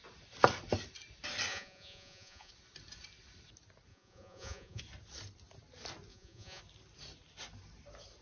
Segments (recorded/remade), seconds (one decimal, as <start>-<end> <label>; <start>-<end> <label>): 0.0-1.5 recorded; 1.5-2.5 remade; 2.5-3.9 recorded; 3.9-4.8 remade; 4.8-6.1 recorded; 6.1-6.6 remade; 6.6-8.2 recorded